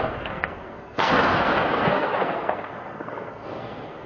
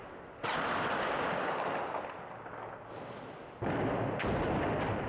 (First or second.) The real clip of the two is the second